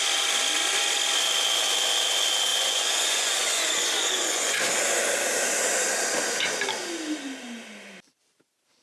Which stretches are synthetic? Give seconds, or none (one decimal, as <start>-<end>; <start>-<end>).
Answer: 2.5-4.7